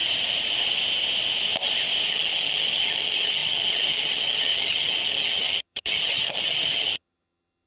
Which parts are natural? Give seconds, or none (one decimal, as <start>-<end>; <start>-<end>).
0.0-2.1